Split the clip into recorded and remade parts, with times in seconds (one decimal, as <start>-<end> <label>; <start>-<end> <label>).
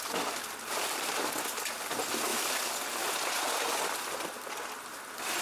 0.0-5.4 recorded